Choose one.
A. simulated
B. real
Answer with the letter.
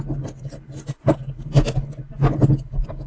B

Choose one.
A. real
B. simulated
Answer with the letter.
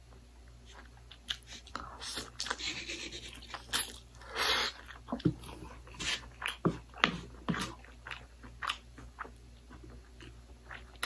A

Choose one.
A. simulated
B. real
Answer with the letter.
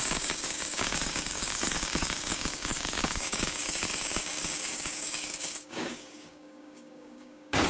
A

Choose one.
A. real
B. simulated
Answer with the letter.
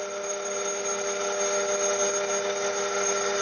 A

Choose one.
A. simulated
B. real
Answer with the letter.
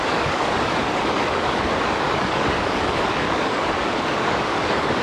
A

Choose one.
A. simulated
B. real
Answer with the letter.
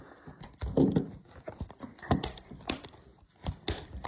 B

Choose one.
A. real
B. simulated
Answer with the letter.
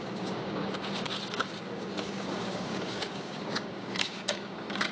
B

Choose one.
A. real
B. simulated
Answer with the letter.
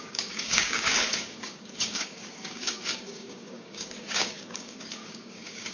B